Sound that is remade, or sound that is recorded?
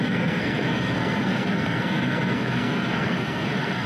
remade